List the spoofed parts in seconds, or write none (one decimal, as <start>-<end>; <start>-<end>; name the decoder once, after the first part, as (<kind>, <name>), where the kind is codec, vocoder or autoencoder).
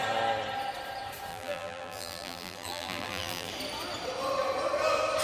1.3-3.5 (vocoder, BigVGAN v2)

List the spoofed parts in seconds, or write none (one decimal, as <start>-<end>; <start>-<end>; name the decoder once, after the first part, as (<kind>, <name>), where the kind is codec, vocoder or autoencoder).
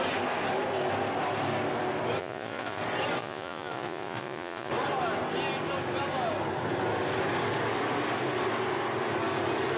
2.2-2.8 (vocoder, Vocos); 3.2-4.7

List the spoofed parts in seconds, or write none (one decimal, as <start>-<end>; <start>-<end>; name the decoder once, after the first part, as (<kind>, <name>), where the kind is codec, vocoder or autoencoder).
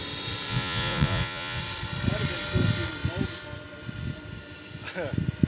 0.5-1.6 (vocoder, Vocos)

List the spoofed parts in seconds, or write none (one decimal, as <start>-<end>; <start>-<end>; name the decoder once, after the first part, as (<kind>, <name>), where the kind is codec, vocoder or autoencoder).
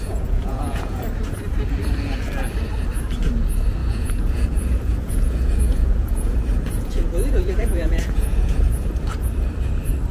0.0-1.0 (vocoder, Vocos); 3.8-8.9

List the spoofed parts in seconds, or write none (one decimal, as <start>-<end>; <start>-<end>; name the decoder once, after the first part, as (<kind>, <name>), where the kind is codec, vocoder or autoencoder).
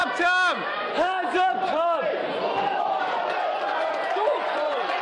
3.0-5.0 (vocoder, Vocos)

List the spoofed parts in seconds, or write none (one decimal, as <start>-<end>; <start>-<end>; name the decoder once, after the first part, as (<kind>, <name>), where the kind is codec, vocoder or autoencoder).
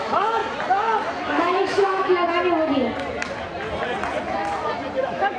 0.0-0.4 (autoencoder, DAC-VAE); 1.2-2.1; 5.0-5.4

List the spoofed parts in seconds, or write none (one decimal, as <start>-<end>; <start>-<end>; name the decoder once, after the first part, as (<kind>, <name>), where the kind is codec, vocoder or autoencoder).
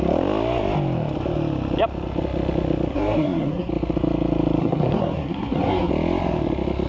2.9-3.7 (codec, SNAC); 4.6-5.9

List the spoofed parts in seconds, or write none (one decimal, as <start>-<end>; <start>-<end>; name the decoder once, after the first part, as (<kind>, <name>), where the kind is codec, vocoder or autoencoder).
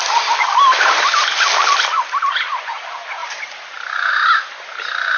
none